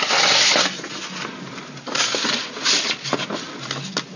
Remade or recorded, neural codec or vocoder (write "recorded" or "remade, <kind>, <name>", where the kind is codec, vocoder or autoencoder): recorded